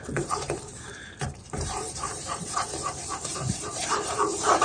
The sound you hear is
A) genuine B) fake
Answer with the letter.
B